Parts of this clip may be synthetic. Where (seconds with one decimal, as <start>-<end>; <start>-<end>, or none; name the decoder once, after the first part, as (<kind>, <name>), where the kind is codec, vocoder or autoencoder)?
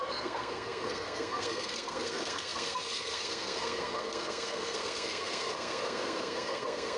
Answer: 0.0-7.0 (codec, SNAC)